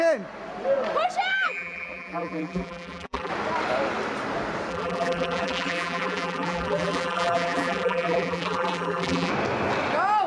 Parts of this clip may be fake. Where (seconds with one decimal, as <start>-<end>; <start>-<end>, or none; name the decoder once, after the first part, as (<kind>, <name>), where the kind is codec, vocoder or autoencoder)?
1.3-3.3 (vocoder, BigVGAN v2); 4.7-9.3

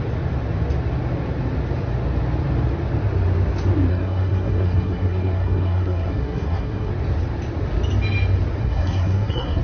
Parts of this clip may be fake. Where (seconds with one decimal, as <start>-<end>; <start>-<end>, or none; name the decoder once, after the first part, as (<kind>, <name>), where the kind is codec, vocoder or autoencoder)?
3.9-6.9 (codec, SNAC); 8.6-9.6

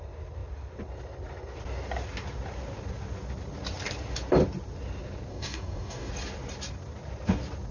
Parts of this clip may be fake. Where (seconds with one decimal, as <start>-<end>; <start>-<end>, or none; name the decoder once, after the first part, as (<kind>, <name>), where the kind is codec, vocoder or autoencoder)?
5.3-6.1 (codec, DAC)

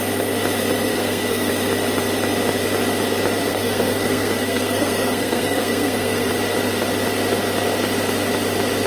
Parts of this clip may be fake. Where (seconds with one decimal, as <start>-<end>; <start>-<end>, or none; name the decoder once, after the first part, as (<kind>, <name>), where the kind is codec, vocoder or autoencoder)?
0.9-1.5 (codec, SNAC); 3.4-6.3